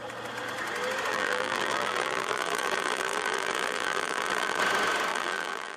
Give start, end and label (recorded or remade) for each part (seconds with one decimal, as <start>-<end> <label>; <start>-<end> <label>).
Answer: 0.0-1.1 recorded; 1.1-4.6 remade; 4.6-5.1 recorded; 5.1-5.8 remade